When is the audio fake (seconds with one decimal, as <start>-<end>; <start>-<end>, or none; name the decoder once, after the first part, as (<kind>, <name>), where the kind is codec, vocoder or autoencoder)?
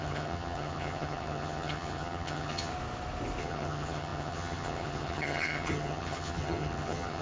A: 0.0-2.7 (vocoder, HiFi-GAN); 3.4-7.2